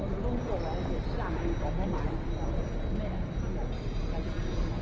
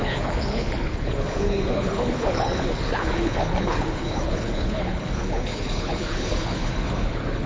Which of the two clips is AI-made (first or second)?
second